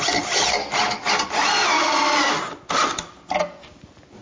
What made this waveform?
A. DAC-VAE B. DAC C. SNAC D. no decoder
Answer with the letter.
D